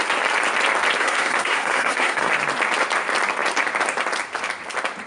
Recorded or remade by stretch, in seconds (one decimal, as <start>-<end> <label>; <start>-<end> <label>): 0.0-1.0 recorded; 1.0-2.3 remade; 2.3-5.1 recorded